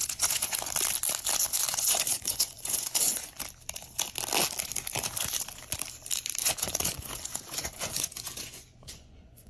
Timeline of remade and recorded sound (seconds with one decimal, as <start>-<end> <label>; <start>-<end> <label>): 0.0-0.6 remade; 0.6-1.7 recorded; 1.7-3.3 remade; 3.3-6.4 recorded; 6.4-9.5 remade